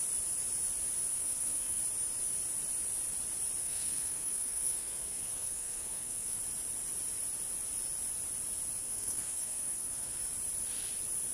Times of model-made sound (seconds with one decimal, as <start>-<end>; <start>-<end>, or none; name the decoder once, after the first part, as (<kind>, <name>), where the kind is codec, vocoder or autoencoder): 1.1-1.8 (codec, SNAC); 3.6-6.4; 8.8-10.2